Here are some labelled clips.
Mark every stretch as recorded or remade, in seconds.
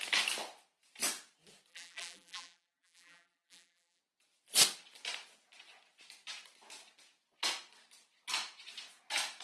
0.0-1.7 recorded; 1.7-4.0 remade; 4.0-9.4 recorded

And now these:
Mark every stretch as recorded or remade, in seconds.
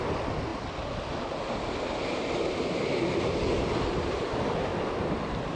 0.0-5.6 recorded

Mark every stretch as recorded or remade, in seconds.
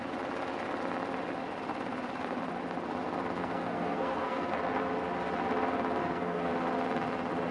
0.0-3.4 recorded; 3.4-4.5 remade; 4.5-6.0 recorded; 6.0-6.5 remade; 6.5-7.5 recorded